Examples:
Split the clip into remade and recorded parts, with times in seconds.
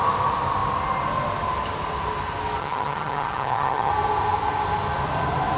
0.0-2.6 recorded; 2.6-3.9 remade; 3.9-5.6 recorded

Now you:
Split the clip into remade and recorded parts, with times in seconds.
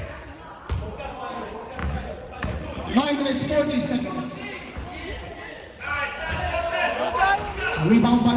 0.0-1.8 recorded; 1.8-3.2 remade; 3.2-5.2 recorded; 5.2-6.0 remade; 6.0-8.4 recorded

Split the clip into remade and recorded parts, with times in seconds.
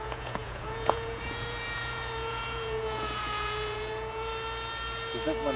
0.0-4.3 remade; 4.3-5.6 recorded